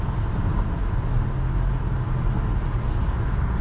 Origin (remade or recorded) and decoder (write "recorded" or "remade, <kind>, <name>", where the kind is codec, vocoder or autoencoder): recorded